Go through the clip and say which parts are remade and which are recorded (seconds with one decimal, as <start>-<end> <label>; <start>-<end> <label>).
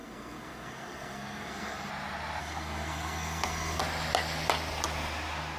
0.0-1.9 remade; 1.9-2.4 recorded; 2.4-3.8 remade; 3.8-5.6 recorded